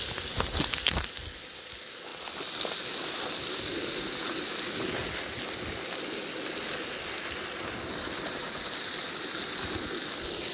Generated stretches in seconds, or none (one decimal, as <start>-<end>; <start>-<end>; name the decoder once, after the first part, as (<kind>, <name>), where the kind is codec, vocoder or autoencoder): none